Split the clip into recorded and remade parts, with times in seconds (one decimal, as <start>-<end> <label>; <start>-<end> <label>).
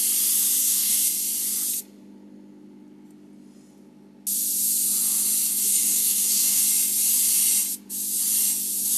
0.0-0.6 recorded; 0.6-1.1 remade; 1.1-5.5 recorded; 5.5-6.6 remade; 6.6-9.0 recorded